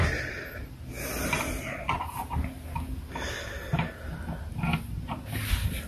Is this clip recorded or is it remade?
recorded